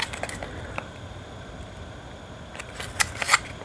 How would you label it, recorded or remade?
recorded